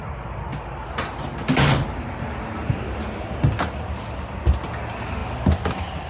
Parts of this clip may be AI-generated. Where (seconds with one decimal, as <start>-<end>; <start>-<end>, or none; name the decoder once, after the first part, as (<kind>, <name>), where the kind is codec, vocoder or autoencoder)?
none